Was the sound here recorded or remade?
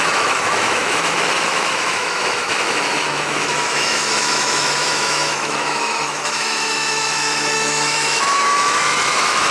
remade